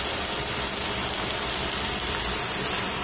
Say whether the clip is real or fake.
real